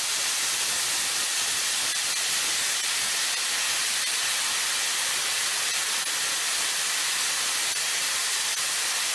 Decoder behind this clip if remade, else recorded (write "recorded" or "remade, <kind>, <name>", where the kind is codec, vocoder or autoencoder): recorded